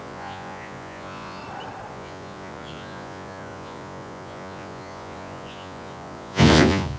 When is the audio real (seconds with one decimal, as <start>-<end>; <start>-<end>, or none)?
1.4-1.9